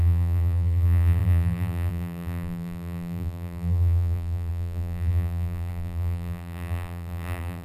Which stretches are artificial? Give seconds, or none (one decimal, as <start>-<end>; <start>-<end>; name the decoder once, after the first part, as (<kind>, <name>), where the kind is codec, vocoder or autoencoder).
0.0-7.6 (vocoder, BigVGAN v2)